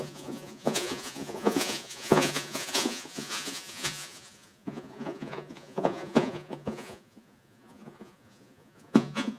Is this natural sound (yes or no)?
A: no